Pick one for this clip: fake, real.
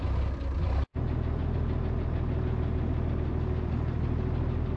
real